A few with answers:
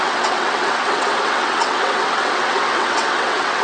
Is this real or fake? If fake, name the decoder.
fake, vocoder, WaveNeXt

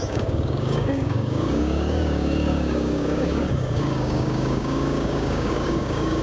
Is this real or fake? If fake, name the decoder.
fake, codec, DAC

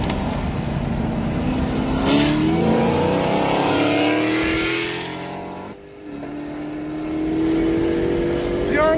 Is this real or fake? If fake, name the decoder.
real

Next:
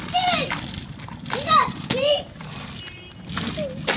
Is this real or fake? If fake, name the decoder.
real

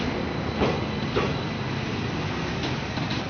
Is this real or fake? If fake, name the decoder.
real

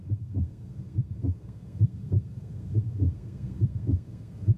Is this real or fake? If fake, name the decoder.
fake, codec, SNAC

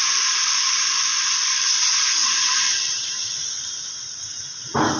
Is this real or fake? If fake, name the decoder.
fake, vocoder, BigVGAN v2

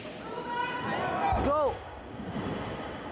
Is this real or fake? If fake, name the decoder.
real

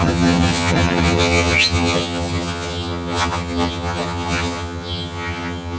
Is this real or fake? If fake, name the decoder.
fake, vocoder, HiFi-GAN